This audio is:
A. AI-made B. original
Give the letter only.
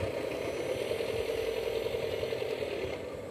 B